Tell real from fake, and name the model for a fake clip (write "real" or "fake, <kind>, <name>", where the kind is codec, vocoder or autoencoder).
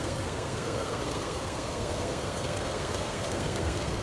fake, codec, SNAC